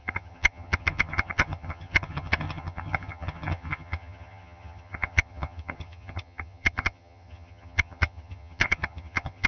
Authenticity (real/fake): fake